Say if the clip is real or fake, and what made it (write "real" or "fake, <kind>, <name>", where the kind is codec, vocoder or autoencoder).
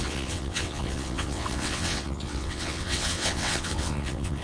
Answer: fake, vocoder, WaveNeXt